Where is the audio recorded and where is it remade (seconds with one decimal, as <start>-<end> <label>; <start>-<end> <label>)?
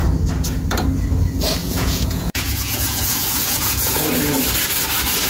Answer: 0.0-1.6 recorded; 1.6-4.0 remade; 4.0-5.3 recorded